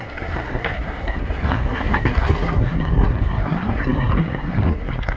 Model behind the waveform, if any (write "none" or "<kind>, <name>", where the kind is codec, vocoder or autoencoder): codec, SNAC